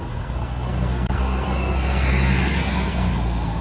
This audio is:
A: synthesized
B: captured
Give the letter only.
A